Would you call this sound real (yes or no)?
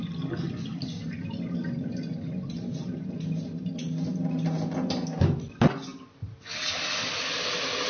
yes